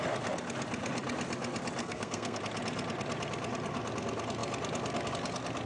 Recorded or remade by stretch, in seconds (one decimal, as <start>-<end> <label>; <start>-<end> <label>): 0.0-1.8 recorded; 1.8-2.4 remade; 2.4-5.7 recorded